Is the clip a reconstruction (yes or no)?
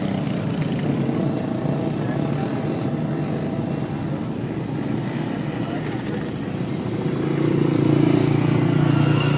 no